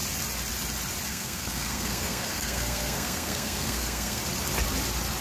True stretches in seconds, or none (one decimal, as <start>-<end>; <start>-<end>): 0.0-1.1; 4.2-5.2